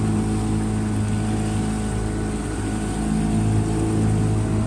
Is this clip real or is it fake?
real